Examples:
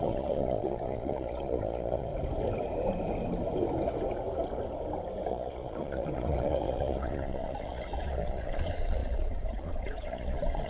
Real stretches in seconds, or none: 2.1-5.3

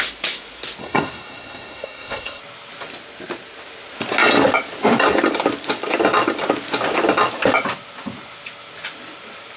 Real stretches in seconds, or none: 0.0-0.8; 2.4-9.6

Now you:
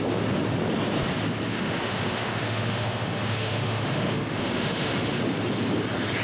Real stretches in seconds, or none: 0.0-1.5; 5.2-6.2